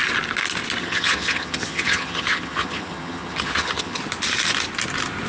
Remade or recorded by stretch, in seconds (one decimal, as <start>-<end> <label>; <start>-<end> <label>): 0.0-0.8 recorded; 0.8-4.0 remade; 4.0-5.3 recorded